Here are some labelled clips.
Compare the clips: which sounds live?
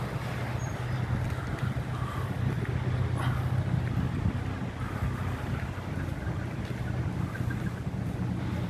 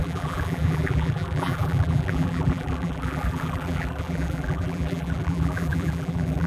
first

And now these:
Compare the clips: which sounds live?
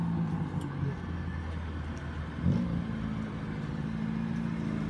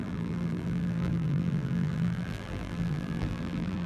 first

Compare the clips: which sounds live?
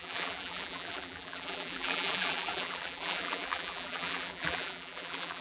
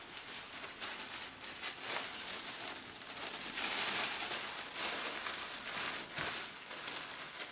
second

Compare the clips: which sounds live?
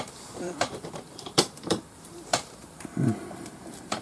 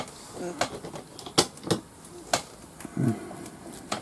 second